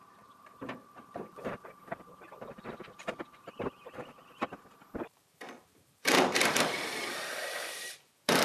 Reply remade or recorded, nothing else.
remade